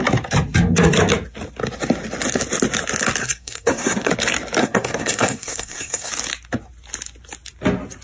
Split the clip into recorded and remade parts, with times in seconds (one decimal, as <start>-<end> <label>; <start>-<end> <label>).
0.0-3.2 recorded; 3.2-4.1 remade; 4.1-4.6 recorded; 4.6-6.1 remade; 6.1-8.0 recorded